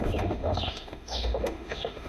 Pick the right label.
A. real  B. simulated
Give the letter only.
B